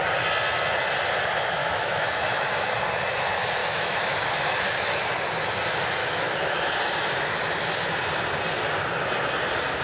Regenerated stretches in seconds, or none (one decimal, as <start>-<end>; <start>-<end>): 1.6-2.8; 3.6-5.1; 6.0-6.7